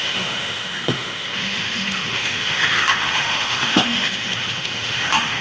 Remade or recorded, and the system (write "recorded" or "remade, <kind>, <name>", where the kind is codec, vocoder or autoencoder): remade, autoencoder, DAC-VAE